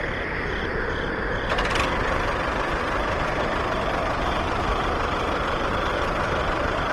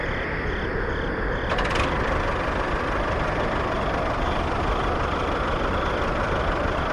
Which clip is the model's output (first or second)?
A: first